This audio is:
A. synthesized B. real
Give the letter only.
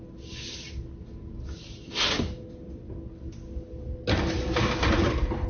B